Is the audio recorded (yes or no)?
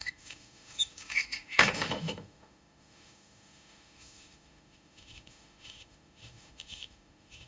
no